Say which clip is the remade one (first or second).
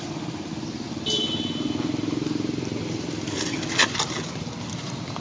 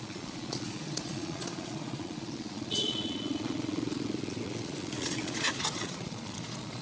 second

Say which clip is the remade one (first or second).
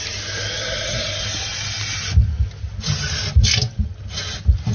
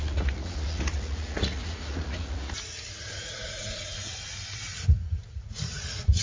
second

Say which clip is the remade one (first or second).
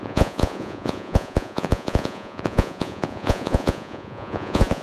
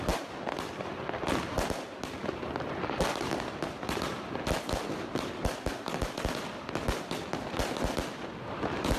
first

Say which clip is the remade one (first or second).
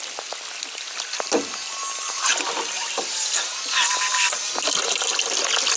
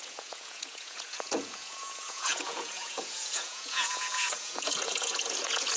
second